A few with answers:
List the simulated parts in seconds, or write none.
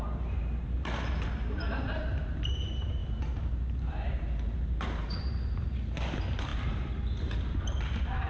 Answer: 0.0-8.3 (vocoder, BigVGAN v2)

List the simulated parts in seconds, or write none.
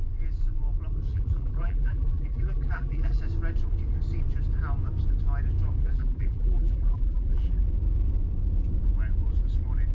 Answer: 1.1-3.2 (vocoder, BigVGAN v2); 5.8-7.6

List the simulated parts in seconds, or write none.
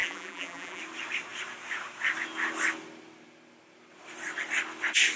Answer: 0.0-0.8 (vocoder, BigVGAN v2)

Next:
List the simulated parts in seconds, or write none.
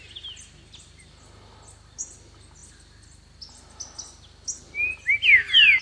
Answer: none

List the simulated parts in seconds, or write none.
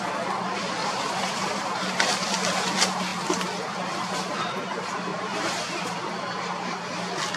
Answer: 0.8-1.8 (vocoder, BigVGAN v2); 5.1-6.1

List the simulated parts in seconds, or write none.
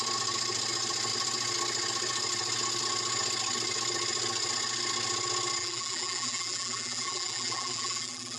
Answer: 5.6-8.4 (vocoder, BigVGAN v2)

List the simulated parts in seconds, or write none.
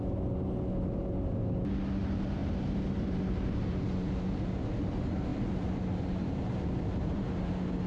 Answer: 2.4-4.5 (vocoder, BigVGAN v2); 5.3-5.8; 6.2-7.5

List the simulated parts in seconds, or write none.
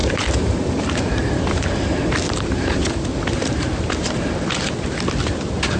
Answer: 0.0-2.8 (vocoder, BigVGAN v2)